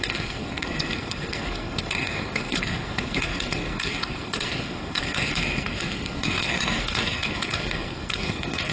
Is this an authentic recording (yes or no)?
no